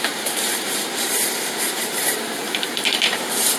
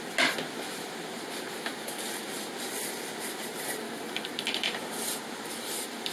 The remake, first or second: first